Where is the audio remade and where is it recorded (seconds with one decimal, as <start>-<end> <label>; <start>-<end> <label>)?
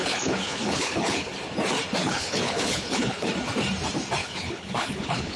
0.0-1.3 remade; 1.3-2.0 recorded; 2.0-3.3 remade; 3.3-4.2 recorded; 4.2-5.4 remade